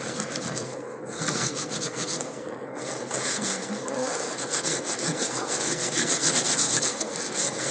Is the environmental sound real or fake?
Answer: fake